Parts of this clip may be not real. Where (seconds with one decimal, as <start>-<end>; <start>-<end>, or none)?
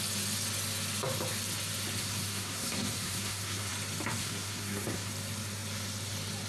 2.0-3.7; 4.2-5.1